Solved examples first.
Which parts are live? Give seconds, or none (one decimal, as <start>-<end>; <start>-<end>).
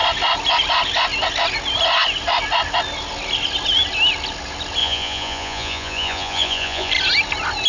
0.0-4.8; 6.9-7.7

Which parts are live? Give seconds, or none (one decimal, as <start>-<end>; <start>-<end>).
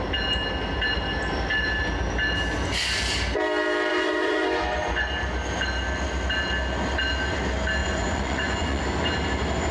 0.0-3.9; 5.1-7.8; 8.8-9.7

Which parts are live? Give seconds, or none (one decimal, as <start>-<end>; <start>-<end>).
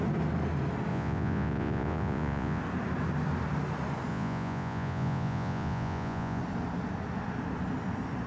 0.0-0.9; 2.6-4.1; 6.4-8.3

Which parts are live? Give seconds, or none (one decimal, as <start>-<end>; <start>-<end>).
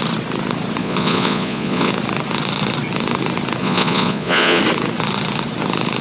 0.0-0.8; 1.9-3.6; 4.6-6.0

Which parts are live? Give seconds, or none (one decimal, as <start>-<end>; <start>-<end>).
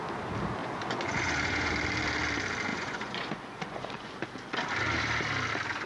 0.0-0.6; 1.7-2.7; 4.1-5.9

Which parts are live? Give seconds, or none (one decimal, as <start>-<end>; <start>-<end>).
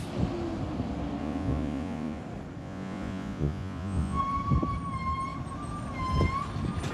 0.0-1.2; 2.2-2.6; 4.2-6.9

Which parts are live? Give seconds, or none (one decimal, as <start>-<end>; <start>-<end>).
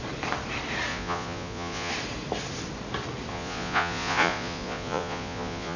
0.0-0.9; 1.9-3.3